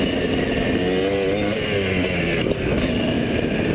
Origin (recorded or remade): recorded